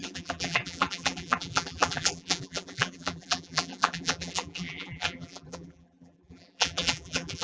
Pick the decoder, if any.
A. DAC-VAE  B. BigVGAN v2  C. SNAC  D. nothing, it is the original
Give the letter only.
B